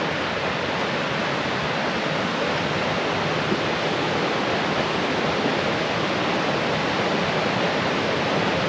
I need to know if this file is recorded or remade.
recorded